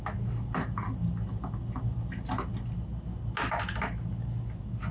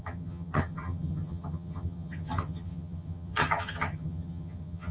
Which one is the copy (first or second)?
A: second